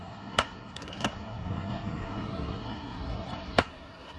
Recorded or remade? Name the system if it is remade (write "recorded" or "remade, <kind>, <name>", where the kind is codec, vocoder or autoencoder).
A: remade, codec, SNAC